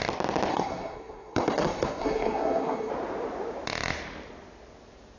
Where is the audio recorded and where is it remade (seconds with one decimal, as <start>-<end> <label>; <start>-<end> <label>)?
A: 0.0-0.5 recorded; 0.5-2.9 remade; 2.9-5.2 recorded

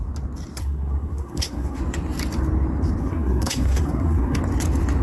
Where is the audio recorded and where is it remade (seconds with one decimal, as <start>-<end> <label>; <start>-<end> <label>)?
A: 0.0-0.6 recorded; 0.6-1.8 remade; 1.8-3.0 recorded; 3.0-4.4 remade; 4.4-5.0 recorded

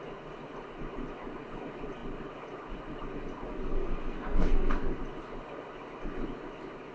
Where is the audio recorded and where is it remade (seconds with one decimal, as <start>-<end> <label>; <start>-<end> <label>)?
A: 0.0-3.5 recorded; 3.5-5.0 remade; 5.0-6.9 recorded

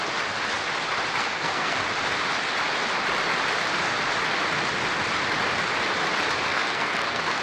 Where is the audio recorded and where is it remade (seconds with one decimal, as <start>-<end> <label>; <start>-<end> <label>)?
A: 0.0-1.2 recorded; 1.2-1.8 remade; 1.8-6.5 recorded; 6.5-7.4 remade

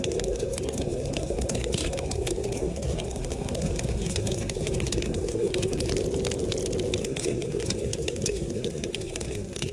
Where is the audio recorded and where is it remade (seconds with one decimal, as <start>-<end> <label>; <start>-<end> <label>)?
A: 0.0-5.9 remade; 5.9-7.0 recorded; 7.0-9.7 remade

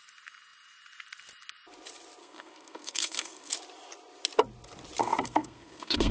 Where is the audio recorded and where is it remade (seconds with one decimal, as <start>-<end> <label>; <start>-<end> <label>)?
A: 0.0-2.2 recorded; 2.2-3.5 remade; 3.5-5.0 recorded; 5.0-6.1 remade